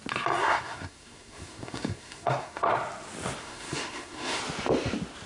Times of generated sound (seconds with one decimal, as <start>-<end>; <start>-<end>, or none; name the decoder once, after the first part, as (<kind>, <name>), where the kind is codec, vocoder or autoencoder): 0.4-2.7 (codec, SNAC); 3.4-4.4